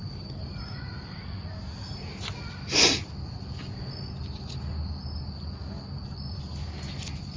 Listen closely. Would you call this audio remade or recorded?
recorded